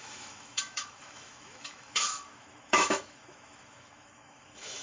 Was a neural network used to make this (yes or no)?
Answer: yes